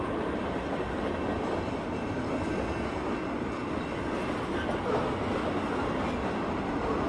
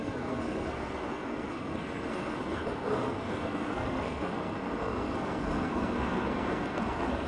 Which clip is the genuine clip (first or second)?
first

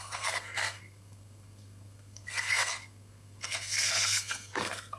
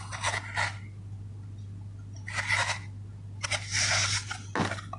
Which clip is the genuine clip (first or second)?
second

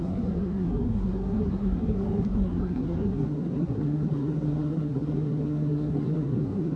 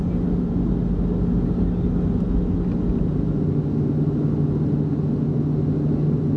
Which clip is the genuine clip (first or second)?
second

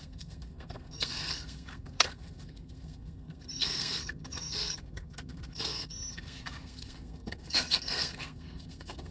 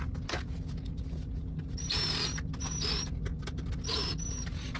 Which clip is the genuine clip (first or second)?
second